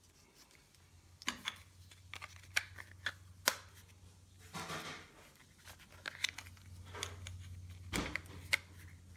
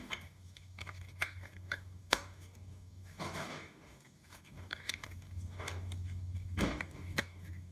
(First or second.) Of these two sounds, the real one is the first